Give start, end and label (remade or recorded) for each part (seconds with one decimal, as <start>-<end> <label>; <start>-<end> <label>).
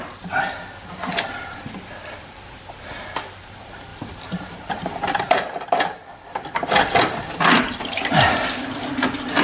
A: 0.0-3.9 recorded; 3.9-8.1 remade; 8.1-9.4 recorded